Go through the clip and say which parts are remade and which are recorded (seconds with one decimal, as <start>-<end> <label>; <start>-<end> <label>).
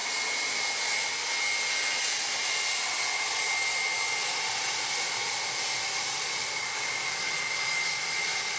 0.0-8.6 recorded